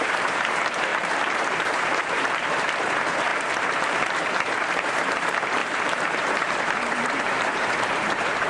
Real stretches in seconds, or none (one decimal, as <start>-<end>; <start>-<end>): none